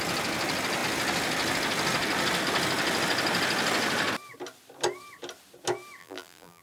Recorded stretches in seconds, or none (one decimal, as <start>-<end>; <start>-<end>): 0.0-6.0